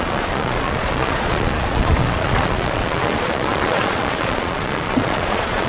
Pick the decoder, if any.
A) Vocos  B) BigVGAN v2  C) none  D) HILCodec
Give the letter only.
A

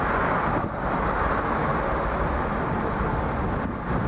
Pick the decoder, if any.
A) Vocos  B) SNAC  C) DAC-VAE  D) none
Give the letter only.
D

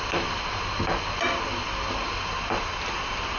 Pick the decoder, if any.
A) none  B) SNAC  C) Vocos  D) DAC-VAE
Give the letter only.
A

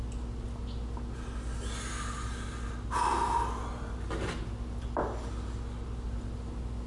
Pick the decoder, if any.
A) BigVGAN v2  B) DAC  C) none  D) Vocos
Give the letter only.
C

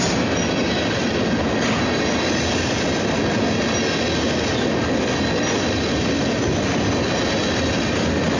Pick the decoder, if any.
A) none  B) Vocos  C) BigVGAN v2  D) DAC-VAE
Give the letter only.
A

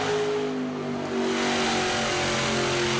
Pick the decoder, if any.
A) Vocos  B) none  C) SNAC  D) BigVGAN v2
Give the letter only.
B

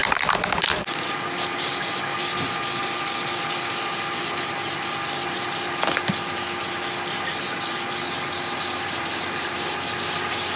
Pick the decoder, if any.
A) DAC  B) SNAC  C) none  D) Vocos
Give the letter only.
C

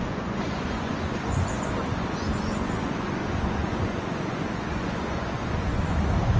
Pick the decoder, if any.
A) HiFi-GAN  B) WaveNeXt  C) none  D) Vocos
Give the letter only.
D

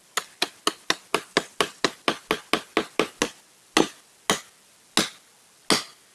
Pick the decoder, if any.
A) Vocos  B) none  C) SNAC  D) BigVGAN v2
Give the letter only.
B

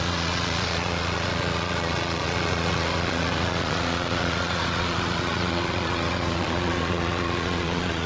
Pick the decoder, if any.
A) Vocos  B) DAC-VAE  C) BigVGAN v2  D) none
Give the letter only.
A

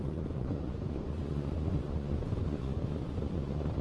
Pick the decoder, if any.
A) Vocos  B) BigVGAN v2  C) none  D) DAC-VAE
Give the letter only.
A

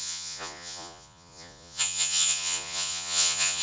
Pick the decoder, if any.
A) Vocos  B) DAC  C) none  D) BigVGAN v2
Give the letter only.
A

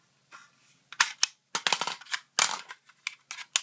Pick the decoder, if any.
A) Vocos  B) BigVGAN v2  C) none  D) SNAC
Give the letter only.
C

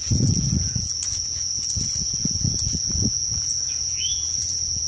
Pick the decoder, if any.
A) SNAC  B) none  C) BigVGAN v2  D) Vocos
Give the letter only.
D